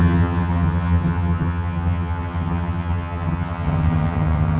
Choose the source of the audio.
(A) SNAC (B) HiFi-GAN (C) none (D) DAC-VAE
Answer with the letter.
B